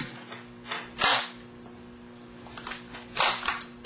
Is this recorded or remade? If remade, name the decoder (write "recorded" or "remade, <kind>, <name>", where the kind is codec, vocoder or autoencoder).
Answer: recorded